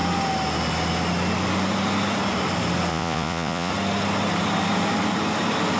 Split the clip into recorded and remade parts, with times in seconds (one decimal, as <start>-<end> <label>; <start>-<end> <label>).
0.0-2.9 recorded; 2.9-3.7 remade; 3.7-5.8 recorded